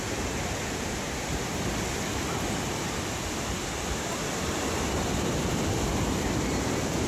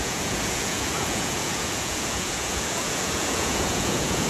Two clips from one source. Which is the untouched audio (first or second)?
first